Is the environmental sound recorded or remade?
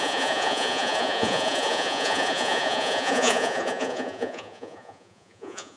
remade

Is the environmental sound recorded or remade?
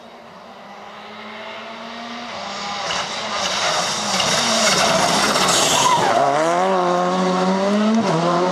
recorded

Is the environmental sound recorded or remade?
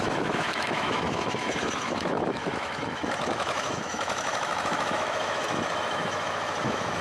remade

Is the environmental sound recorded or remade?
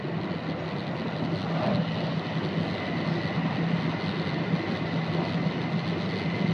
recorded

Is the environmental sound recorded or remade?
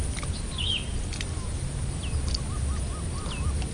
recorded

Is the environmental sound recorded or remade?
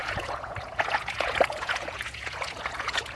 remade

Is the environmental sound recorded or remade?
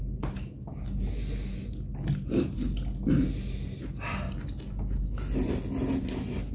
recorded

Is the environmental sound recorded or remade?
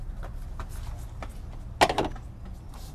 recorded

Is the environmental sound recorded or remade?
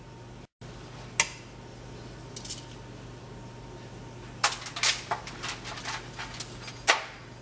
recorded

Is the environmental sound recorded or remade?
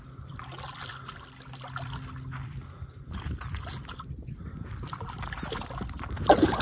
recorded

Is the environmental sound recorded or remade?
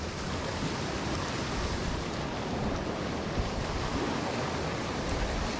recorded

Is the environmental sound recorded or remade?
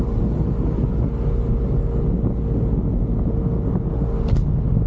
recorded